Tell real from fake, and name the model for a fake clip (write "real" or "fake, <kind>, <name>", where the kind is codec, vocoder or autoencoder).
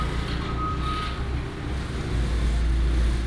real